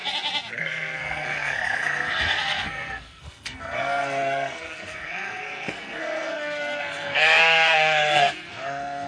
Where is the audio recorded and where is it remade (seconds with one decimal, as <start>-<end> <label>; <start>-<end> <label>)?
0.0-0.6 recorded; 0.6-9.1 remade